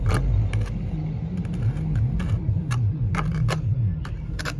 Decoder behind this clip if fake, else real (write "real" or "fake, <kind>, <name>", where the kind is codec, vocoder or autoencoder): real